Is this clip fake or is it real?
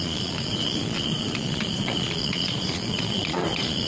fake